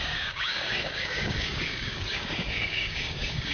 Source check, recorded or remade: remade